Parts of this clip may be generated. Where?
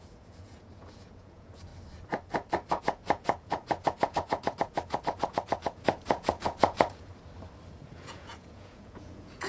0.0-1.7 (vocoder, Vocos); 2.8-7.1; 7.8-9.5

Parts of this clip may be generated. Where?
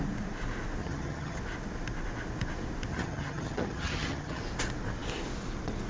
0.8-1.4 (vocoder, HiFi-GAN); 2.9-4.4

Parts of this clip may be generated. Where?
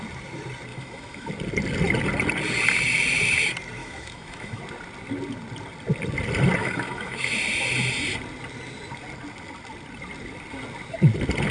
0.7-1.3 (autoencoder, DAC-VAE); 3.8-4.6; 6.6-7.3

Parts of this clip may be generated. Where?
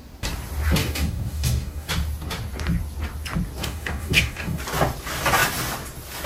0.8-1.9 (codec, DAC); 3.6-4.6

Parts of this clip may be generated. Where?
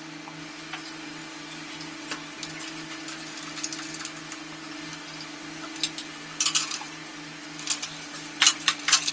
none